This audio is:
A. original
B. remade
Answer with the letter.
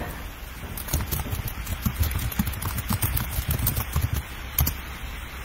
A